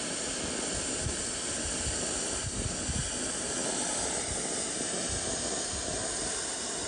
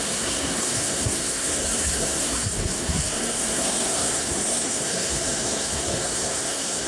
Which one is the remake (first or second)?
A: second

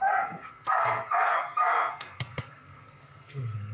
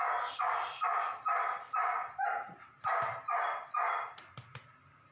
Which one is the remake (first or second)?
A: first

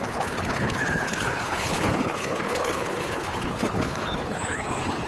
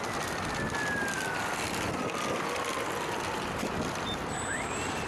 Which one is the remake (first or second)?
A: first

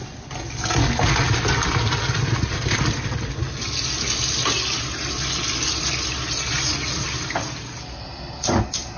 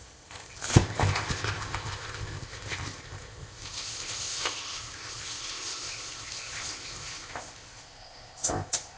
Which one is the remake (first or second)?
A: second